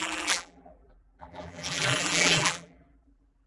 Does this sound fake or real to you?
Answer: fake